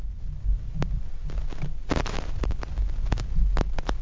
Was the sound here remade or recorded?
recorded